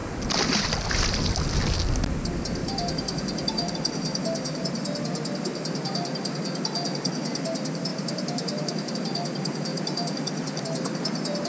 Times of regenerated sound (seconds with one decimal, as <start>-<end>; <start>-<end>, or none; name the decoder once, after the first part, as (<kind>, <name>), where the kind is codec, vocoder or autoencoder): 2.6-3.7 (vocoder, BigVGAN v2); 7.9-8.9; 9.7-10.6